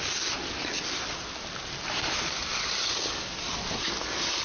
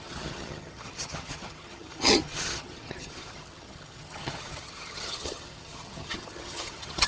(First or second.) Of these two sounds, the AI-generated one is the second